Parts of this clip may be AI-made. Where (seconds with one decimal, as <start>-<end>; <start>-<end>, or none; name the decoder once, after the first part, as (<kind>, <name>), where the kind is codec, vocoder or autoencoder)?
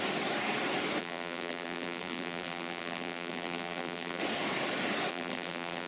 1.0-4.2 (vocoder, BigVGAN v2); 5.1-5.9